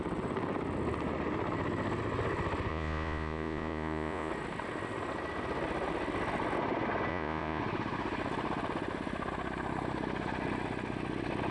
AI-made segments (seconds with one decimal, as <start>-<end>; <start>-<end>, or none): 2.7-4.3; 7.1-7.6